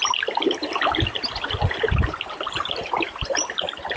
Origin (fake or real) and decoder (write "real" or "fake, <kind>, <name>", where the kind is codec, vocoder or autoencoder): real